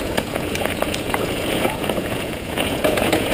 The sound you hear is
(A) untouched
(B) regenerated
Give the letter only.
B